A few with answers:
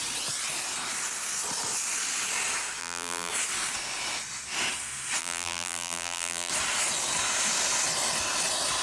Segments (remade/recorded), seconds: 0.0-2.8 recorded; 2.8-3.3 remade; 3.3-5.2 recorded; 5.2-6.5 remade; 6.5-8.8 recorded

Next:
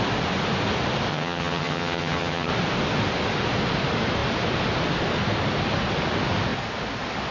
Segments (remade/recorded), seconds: 0.0-1.1 recorded; 1.1-2.5 remade; 2.5-7.3 recorded